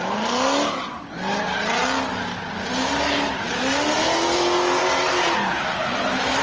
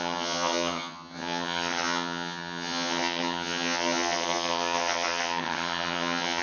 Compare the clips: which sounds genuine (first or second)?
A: first